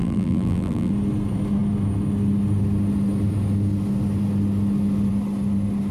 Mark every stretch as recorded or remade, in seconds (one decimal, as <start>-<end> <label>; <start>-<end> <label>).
0.0-0.9 remade; 0.9-5.9 recorded

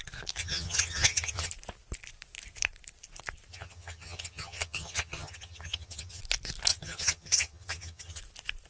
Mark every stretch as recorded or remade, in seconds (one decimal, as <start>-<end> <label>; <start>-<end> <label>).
0.0-0.4 recorded; 0.4-1.5 remade; 1.5-3.5 recorded; 3.5-6.2 remade; 6.2-6.7 recorded; 6.7-8.2 remade; 8.2-8.7 recorded

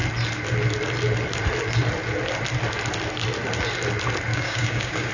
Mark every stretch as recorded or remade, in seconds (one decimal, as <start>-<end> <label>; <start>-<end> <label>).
0.0-4.3 recorded; 4.3-5.1 remade